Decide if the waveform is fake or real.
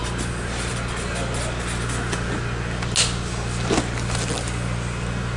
real